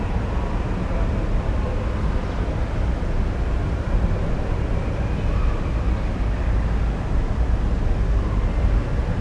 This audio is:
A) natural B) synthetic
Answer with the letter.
A